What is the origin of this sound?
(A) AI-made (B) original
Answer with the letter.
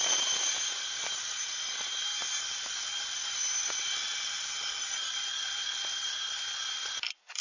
B